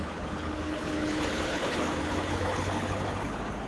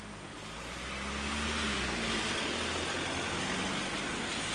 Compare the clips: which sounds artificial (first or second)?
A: first